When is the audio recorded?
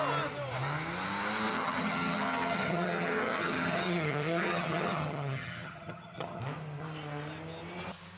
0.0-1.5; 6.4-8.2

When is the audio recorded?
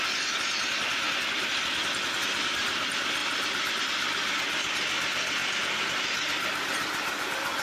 0.0-7.6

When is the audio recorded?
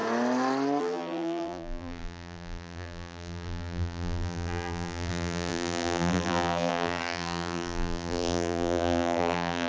0.0-0.8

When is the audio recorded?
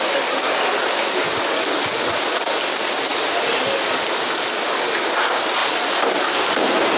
0.0-7.0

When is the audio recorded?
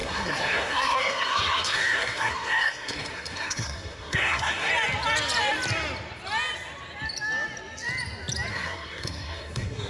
4.7-8.5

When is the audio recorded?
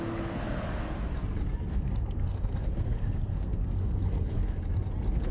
0.0-1.7; 4.6-5.3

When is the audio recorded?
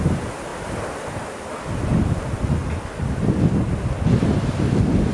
0.0-5.1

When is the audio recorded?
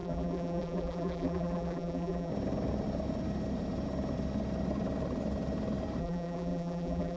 2.3-6.0